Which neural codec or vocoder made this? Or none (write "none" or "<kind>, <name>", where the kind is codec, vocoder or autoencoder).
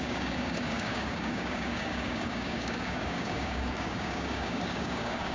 codec, DAC